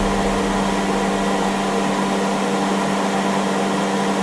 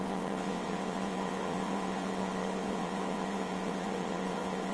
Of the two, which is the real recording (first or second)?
first